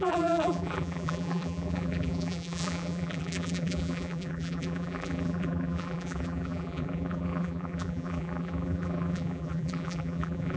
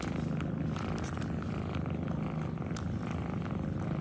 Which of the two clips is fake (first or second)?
first